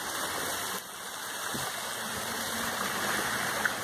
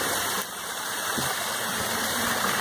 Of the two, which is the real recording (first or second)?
first